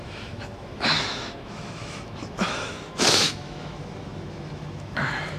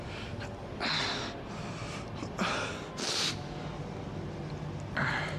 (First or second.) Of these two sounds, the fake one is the first